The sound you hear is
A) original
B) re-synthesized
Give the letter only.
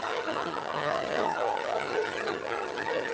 B